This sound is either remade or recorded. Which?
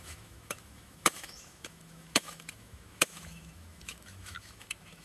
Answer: remade